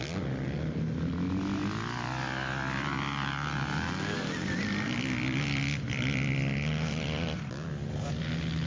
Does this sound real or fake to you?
real